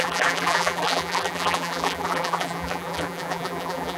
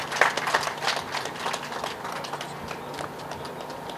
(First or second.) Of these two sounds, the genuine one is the second